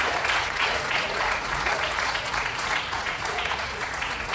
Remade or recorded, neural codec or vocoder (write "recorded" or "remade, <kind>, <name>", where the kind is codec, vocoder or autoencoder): remade, vocoder, Vocos